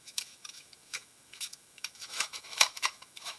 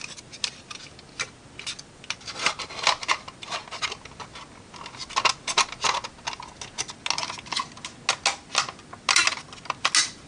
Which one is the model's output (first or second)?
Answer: first